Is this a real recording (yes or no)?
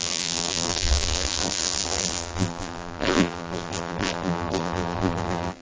no